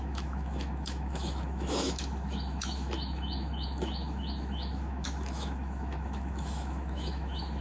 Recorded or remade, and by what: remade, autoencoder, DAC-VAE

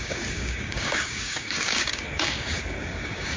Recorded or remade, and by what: remade, codec, DAC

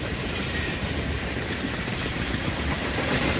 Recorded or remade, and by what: remade, vocoder, BigVGAN v2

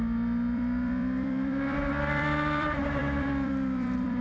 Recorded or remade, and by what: remade, vocoder, BigVGAN v2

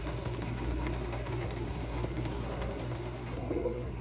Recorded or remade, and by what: remade, codec, SNAC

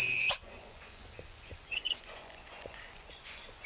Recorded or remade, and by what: remade, vocoder, Vocos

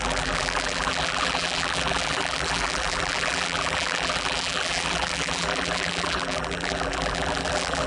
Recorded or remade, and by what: remade, vocoder, BigVGAN v2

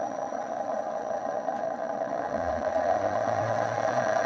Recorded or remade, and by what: remade, vocoder, Vocos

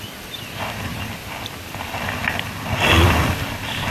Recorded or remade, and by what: recorded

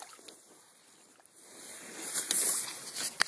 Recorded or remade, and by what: recorded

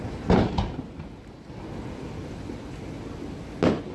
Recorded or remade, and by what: recorded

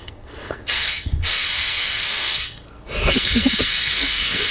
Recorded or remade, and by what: remade, codec, SNAC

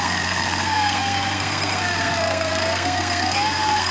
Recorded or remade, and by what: remade, codec, SNAC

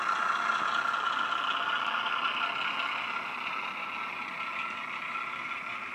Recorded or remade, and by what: recorded